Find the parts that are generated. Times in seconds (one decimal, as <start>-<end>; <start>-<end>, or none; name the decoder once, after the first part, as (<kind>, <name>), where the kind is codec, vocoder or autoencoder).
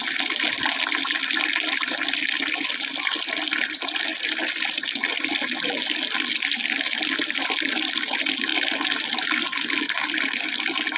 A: none